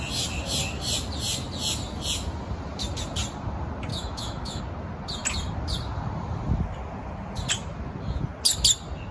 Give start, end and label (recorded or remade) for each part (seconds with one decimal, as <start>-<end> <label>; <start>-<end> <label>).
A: 0.0-3.9 recorded; 3.9-4.6 remade; 4.6-9.1 recorded